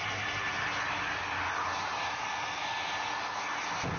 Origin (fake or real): real